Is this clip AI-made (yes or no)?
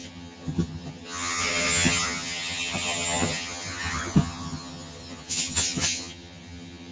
yes